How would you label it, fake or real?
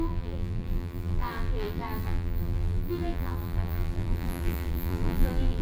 fake